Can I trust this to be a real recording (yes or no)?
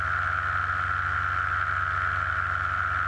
yes